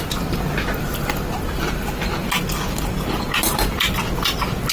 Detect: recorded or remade recorded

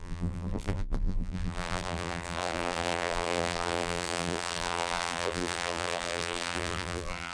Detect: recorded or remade remade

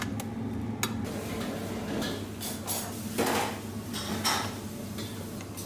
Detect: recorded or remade recorded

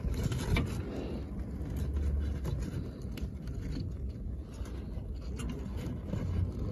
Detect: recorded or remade recorded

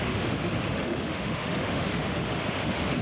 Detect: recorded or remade remade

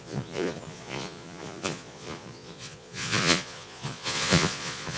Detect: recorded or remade remade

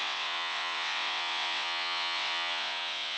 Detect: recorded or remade remade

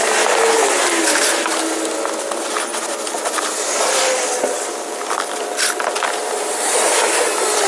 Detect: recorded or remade recorded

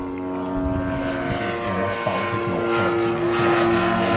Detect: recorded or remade recorded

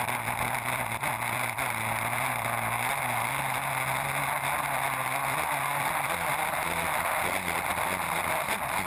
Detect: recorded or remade recorded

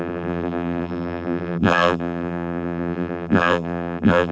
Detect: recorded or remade remade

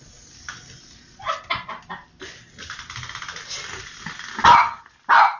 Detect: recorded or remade recorded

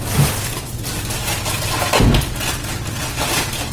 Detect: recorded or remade recorded